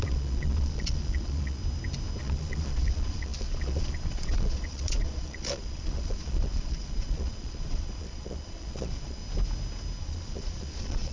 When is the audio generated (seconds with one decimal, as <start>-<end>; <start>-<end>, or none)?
0.0-1.6; 2.2-9.2; 10.0-11.1